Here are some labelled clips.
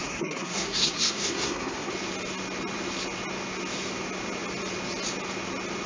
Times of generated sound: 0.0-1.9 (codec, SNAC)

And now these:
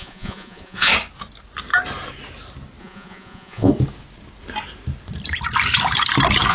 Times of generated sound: 0.0-0.9 (vocoder, Vocos); 2.8-3.7

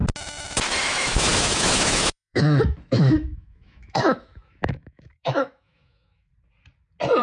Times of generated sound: 0.8-6.3 (autoencoder, DAC-VAE)

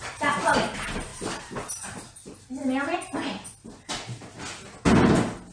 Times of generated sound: none

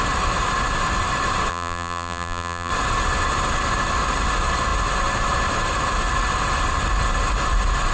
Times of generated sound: 1.5-2.7 (vocoder, BigVGAN v2)

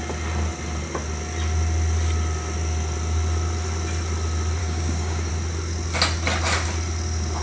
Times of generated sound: 4.6-5.3 (codec, DAC)